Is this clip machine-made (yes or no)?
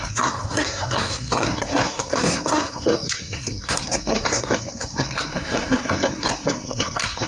yes